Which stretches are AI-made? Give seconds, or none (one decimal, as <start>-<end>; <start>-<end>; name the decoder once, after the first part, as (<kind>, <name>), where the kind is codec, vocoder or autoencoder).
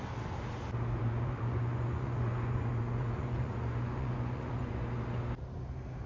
1.0-4.7 (vocoder, Vocos)